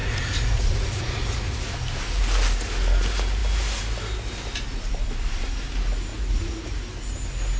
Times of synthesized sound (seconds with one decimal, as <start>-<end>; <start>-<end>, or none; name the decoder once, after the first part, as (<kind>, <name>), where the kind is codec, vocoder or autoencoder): 0.0-1.7 (vocoder, Vocos); 6.1-6.7